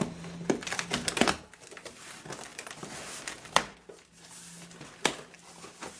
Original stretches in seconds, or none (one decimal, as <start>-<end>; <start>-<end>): 0.0-6.0